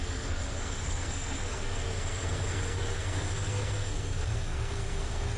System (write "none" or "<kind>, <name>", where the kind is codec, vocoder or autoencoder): codec, SNAC